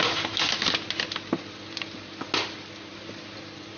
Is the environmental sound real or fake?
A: real